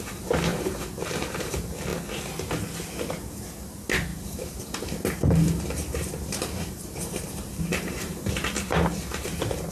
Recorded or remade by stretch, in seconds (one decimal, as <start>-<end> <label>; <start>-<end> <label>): 0.0-0.5 recorded; 0.5-1.5 remade; 1.5-4.1 recorded; 4.1-8.3 remade; 8.3-9.1 recorded; 9.1-9.7 remade